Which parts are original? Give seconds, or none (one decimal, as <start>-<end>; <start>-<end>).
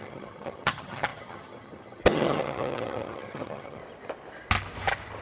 3.8-5.2